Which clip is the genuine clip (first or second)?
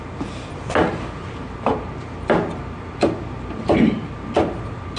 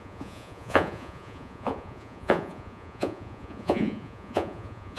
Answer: first